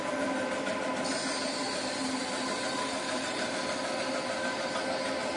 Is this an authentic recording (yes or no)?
yes